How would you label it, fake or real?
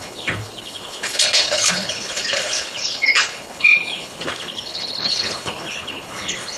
fake